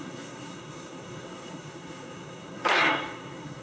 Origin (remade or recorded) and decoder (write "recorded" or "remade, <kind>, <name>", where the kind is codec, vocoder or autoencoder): remade, codec, SNAC